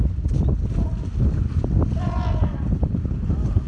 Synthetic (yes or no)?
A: no